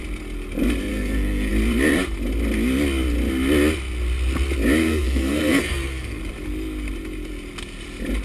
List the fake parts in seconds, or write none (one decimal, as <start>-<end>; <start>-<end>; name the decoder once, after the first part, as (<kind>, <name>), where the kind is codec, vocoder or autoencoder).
0.9-1.5 (codec, SNAC); 4.8-6.2